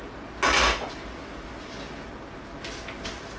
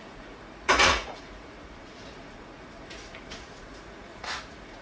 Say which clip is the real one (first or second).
first